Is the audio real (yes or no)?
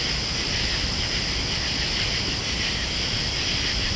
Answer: yes